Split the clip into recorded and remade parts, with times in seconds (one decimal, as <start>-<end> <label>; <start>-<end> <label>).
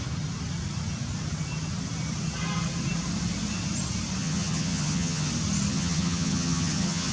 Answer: 0.0-4.2 recorded; 4.2-5.3 remade; 5.3-5.7 recorded; 5.7-7.1 remade